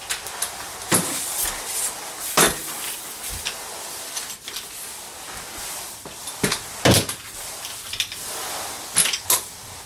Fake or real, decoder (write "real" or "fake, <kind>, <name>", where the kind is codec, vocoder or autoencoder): real